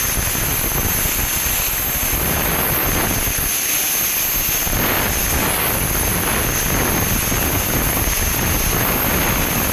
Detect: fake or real real